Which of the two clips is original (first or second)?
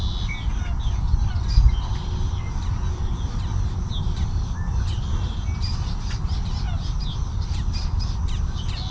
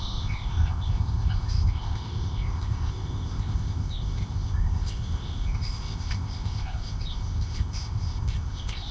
first